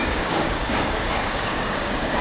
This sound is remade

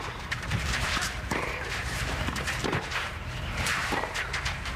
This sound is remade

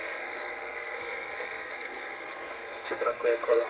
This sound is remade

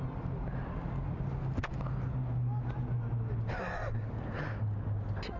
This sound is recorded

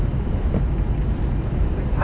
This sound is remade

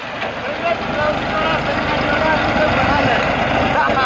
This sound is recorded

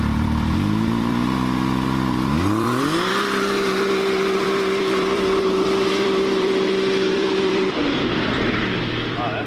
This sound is remade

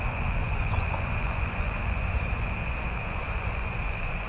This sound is remade